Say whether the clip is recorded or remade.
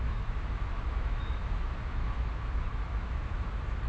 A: remade